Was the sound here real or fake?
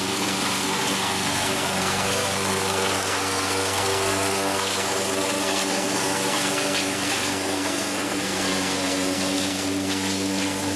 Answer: fake